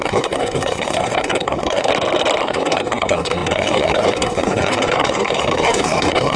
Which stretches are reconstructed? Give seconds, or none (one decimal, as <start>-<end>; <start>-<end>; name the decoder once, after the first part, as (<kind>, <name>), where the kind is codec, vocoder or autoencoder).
0.0-1.9 (codec, SNAC); 2.4-6.4